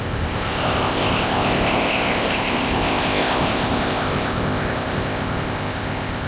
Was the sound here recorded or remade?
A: remade